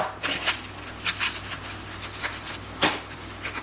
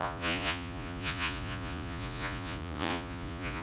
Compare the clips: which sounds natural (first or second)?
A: first